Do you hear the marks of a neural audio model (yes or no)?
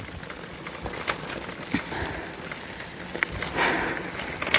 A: no